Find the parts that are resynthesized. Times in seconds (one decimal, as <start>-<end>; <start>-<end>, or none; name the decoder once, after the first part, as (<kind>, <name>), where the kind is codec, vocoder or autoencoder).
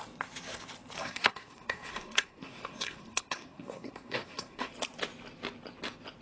1.0-4.7 (codec, SNAC)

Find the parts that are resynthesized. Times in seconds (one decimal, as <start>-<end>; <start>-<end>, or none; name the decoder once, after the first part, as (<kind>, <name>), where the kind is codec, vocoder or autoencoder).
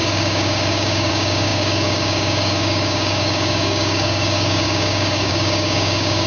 0.0-6.3 (codec, DAC)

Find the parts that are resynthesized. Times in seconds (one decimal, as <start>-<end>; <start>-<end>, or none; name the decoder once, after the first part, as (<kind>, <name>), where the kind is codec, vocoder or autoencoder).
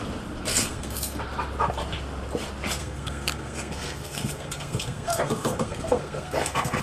0.5-1.2 (codec, SNAC); 2.8-6.8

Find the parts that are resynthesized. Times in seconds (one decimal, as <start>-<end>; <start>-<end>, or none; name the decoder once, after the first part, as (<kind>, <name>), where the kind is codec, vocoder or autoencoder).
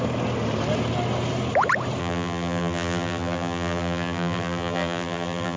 2.0-5.6 (vocoder, BigVGAN v2)